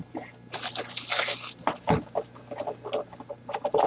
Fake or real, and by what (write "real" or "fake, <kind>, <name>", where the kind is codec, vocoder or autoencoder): real